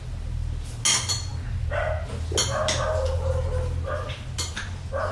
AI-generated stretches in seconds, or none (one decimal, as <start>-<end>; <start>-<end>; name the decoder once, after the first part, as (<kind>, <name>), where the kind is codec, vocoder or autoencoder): none